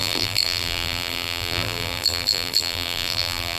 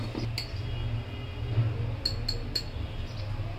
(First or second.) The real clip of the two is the second